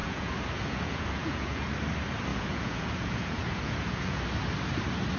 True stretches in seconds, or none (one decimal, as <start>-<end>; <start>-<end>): 1.6-2.3; 4.2-5.2